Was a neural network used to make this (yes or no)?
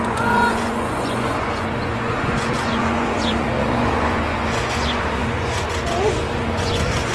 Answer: yes